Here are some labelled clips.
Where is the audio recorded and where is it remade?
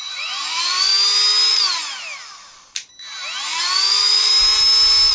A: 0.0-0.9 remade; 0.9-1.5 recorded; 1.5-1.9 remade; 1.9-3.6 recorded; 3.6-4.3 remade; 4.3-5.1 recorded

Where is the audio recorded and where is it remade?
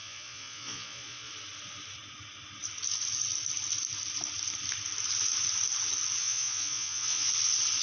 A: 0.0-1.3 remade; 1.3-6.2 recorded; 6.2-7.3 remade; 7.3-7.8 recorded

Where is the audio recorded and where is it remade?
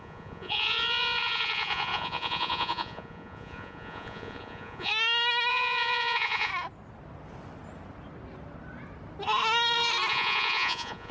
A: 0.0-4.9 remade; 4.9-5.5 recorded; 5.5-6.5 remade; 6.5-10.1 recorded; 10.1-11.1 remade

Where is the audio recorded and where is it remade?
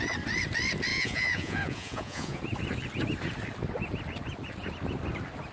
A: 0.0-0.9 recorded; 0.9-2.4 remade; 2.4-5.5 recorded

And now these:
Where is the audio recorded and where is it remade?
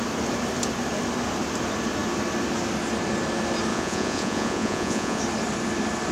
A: 0.0-3.7 recorded; 3.7-5.2 remade; 5.2-6.1 recorded